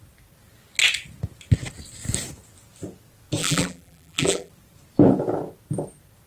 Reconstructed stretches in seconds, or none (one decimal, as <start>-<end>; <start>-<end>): 3.4-4.5

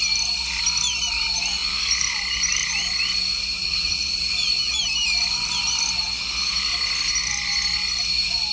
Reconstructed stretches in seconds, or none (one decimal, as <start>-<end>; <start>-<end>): 3.6-4.3